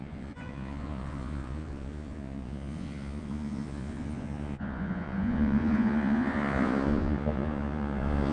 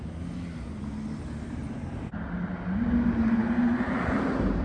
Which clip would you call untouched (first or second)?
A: second